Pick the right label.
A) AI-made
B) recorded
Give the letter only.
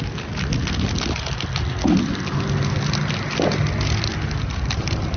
B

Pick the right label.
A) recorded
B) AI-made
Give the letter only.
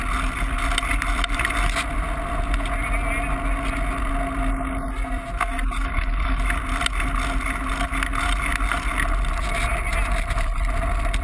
A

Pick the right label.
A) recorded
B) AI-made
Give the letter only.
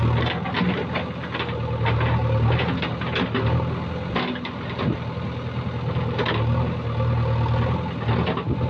A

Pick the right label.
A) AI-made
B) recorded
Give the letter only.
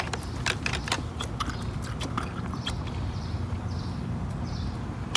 A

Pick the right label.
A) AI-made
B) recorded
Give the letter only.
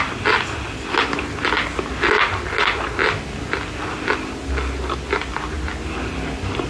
B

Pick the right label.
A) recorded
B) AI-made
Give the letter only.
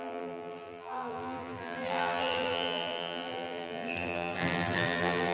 B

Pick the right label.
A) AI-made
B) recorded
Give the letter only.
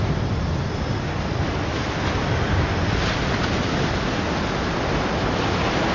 B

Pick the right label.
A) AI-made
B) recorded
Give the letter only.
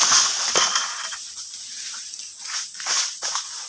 B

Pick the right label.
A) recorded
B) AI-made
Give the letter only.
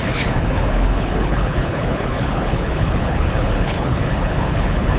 B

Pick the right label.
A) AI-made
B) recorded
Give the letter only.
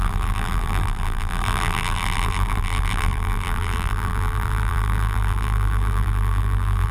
A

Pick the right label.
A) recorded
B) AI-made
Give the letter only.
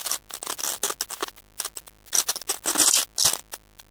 A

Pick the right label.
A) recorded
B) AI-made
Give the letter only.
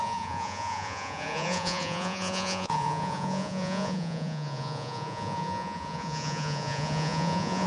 B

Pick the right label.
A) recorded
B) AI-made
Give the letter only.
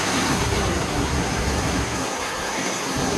B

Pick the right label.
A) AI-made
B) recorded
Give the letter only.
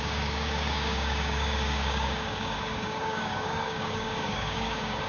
A